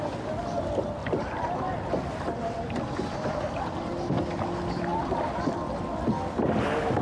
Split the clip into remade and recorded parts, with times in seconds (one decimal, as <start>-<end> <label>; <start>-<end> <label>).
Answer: 0.0-1.0 recorded; 1.0-2.8 remade; 2.8-4.9 recorded; 4.9-5.5 remade; 5.5-7.0 recorded